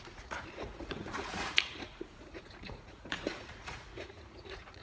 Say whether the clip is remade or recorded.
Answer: remade